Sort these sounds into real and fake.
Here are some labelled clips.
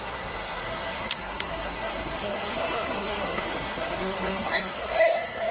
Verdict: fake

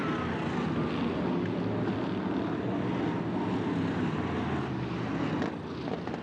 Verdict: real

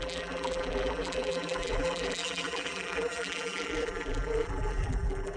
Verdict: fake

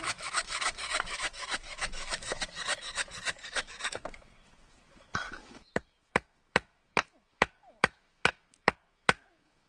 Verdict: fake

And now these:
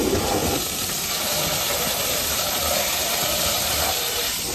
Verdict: real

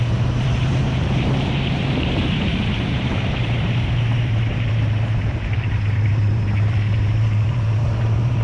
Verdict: fake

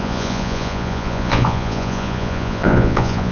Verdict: fake